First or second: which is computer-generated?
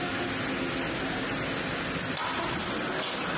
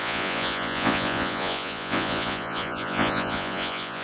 second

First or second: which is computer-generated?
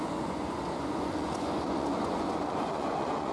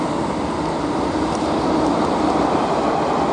first